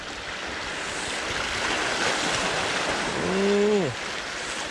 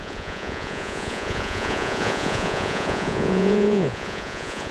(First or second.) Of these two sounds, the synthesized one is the second